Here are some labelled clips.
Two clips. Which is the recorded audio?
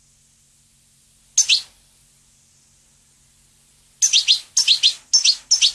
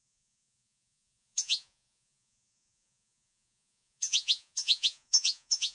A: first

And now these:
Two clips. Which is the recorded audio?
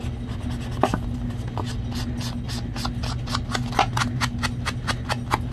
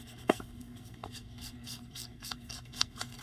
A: first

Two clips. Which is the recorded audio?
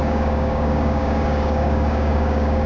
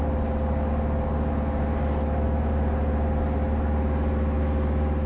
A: second